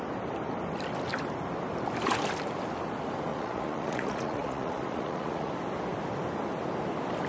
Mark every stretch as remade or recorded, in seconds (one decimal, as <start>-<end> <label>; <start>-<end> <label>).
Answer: 0.0-3.3 recorded; 3.3-5.5 remade; 5.5-7.3 recorded